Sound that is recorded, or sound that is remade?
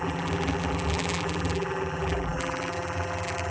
remade